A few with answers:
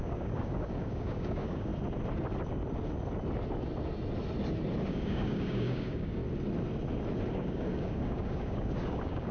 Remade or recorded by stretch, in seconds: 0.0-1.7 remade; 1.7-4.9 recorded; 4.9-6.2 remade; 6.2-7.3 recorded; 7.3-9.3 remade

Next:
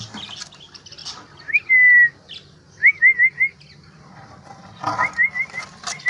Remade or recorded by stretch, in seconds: 0.0-6.1 recorded

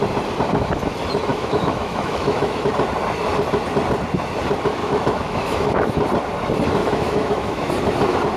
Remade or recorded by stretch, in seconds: 0.0-1.3 recorded; 1.3-2.7 remade; 2.7-4.8 recorded; 4.8-6.0 remade; 6.0-6.8 recorded; 6.8-7.7 remade; 7.7-8.4 recorded

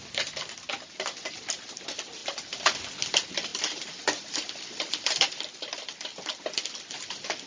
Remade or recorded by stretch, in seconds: 0.0-2.2 remade; 2.2-3.0 recorded; 3.0-6.1 remade; 6.1-6.8 recorded; 6.8-7.5 remade

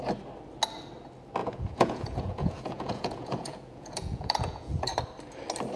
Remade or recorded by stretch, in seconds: 0.0-1.4 recorded; 1.4-4.9 remade; 4.9-5.8 recorded

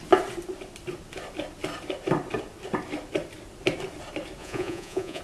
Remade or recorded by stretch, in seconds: 0.0-4.4 recorded; 4.4-5.2 remade

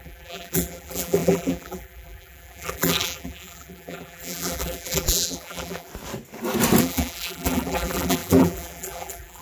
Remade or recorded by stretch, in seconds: 0.0-5.9 remade; 5.9-6.8 recorded; 6.8-9.4 remade